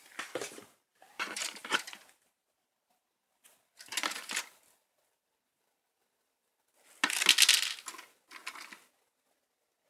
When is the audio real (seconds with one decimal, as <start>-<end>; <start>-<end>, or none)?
0.0-0.9; 3.0-9.9